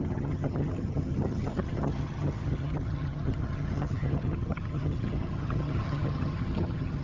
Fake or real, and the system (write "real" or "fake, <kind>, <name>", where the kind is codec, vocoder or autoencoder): fake, vocoder, HiFi-GAN